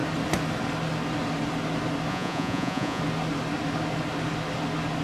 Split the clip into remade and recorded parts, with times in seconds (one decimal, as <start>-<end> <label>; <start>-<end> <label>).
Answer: 0.0-2.1 recorded; 2.1-3.0 remade; 3.0-5.0 recorded